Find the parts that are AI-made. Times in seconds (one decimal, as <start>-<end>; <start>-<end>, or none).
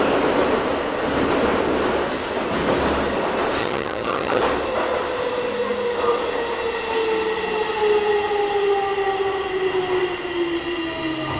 3.6-4.4